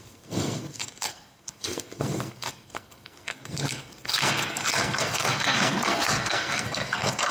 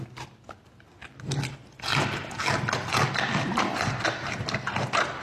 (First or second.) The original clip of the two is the second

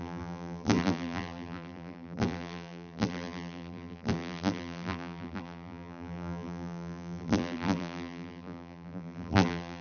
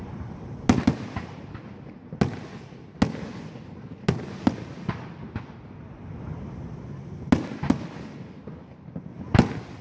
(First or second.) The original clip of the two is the second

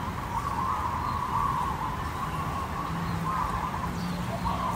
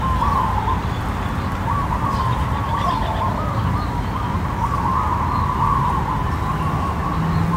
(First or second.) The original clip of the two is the second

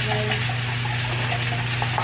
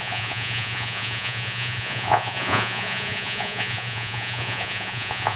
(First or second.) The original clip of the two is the first